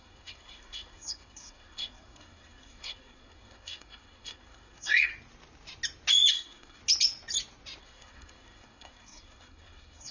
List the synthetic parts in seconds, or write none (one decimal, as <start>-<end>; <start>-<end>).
0.0-5.1; 6.3-6.8; 7.8-10.1